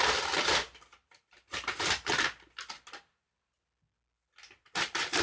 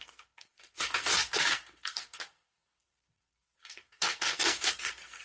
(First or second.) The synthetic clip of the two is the second